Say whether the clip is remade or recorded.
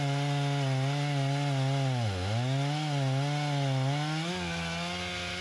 recorded